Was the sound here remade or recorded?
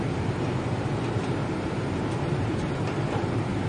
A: remade